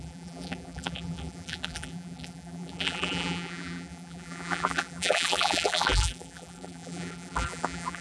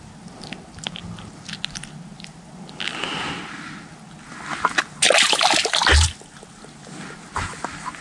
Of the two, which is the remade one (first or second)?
first